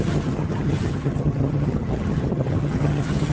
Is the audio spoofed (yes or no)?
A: yes